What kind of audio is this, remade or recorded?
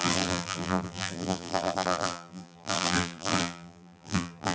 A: remade